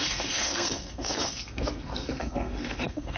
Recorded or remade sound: remade